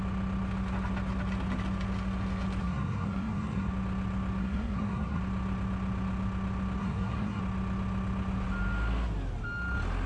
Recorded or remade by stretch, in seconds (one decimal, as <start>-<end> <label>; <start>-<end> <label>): 0.0-2.6 recorded; 2.6-3.7 remade; 3.7-4.4 recorded; 4.4-5.2 remade; 5.2-6.8 recorded; 6.8-7.4 remade; 7.4-10.1 recorded